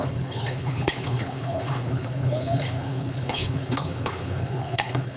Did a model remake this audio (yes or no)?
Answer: yes